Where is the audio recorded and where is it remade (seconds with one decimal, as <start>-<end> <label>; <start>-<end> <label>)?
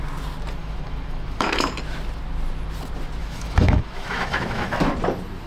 0.0-0.6 recorded; 0.6-1.7 remade; 1.7-3.2 recorded; 3.2-4.8 remade; 4.8-5.5 recorded